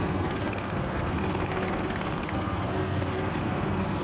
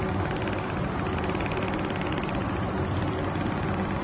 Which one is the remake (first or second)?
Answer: first